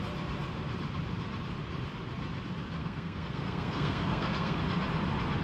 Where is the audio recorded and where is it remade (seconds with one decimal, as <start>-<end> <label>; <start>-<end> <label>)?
0.0-2.8 recorded; 2.8-4.6 remade; 4.6-5.4 recorded